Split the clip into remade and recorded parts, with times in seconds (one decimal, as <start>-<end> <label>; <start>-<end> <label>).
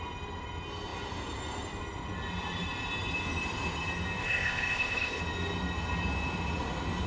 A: 0.0-4.2 recorded; 4.2-5.2 remade; 5.2-7.1 recorded